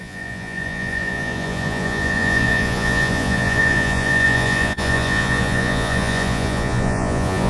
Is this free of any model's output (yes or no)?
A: no